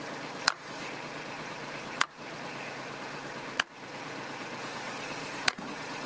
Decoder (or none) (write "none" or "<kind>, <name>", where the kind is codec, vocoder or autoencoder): vocoder, Vocos